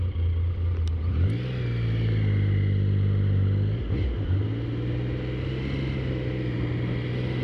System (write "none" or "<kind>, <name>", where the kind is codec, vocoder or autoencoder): none